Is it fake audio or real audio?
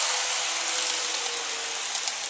real